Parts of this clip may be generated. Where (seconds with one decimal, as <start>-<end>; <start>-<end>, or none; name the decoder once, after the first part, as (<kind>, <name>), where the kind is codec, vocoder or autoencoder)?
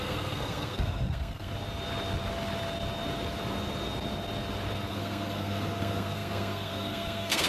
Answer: 0.0-1.5 (codec, SNAC); 4.9-7.5